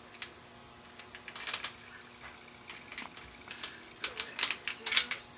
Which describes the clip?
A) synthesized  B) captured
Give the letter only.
B